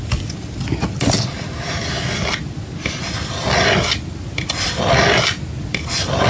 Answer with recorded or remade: recorded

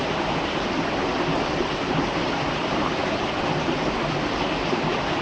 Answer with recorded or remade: recorded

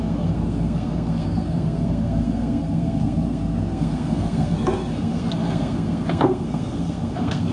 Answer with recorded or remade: remade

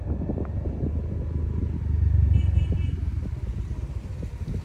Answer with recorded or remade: recorded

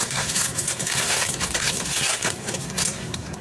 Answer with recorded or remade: remade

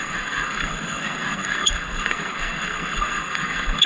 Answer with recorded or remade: remade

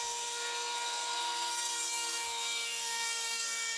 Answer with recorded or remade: remade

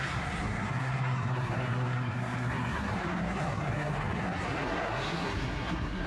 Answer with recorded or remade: remade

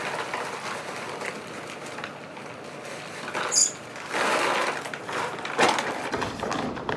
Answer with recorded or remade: recorded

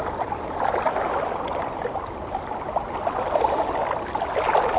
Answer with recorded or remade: recorded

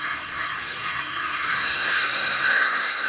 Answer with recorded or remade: remade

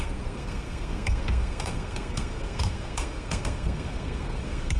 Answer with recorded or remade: remade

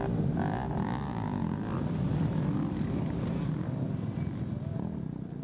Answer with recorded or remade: recorded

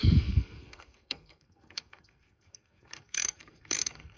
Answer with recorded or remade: remade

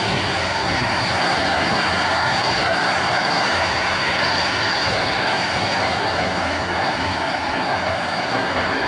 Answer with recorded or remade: remade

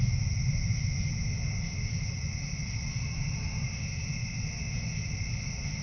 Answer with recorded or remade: recorded